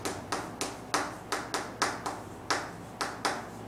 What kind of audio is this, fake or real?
real